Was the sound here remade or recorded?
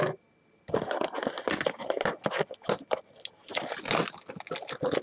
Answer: recorded